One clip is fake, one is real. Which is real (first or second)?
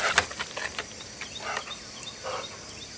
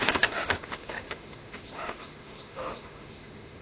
first